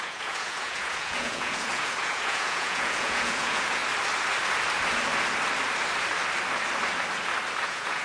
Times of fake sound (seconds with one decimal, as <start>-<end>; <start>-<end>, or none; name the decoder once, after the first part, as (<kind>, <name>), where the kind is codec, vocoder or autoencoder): 0.0-3.8 (vocoder, Vocos); 7.6-8.0